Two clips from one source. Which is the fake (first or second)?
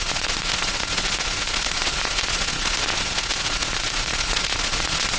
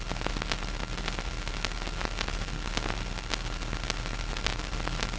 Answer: first